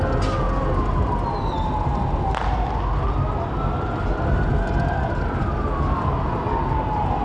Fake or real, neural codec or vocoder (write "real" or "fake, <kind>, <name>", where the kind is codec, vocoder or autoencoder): real